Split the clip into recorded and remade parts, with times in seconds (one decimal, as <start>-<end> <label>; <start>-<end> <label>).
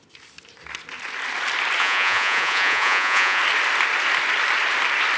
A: 0.0-1.8 recorded; 1.8-3.4 remade; 3.4-5.2 recorded